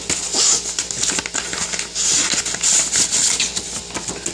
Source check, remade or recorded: recorded